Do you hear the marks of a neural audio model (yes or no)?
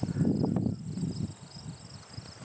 no